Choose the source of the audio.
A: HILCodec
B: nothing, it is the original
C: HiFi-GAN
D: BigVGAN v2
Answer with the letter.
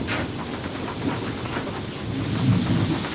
B